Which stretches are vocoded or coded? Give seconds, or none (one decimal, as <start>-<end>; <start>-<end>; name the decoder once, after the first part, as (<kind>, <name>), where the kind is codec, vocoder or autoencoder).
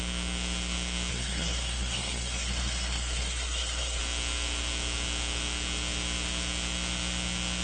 1.1-4.0 (codec, SNAC)